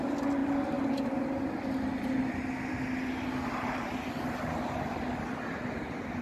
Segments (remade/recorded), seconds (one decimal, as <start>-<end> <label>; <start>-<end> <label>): 0.0-6.2 recorded